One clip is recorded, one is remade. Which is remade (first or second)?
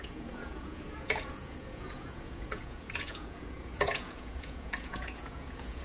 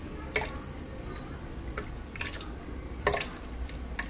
first